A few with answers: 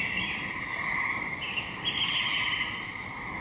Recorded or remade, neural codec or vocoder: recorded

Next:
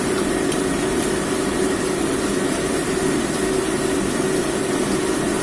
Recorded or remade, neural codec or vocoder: recorded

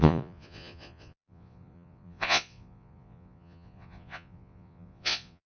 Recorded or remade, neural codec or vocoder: remade, vocoder, Vocos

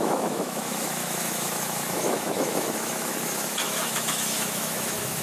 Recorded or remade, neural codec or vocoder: remade, autoencoder, DAC-VAE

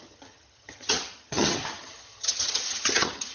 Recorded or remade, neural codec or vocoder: remade, vocoder, HiFi-GAN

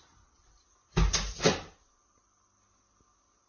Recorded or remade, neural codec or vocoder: recorded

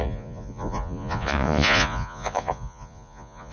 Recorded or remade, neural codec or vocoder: remade, vocoder, Vocos